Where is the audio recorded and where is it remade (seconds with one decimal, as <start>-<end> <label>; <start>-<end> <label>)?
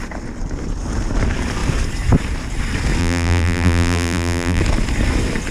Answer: 0.0-3.0 recorded; 3.0-4.6 remade; 4.6-5.5 recorded